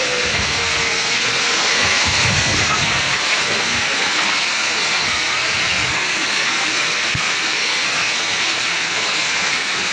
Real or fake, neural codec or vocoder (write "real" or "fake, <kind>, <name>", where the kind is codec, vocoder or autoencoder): fake, codec, SNAC